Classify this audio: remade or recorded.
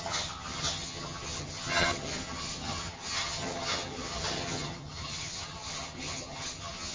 remade